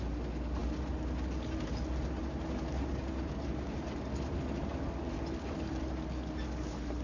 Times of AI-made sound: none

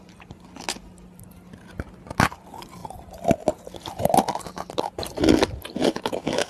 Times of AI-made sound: 5.8-6.5 (codec, DAC)

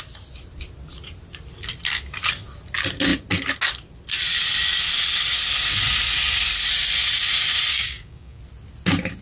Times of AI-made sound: 7.7-8.4 (codec, DAC)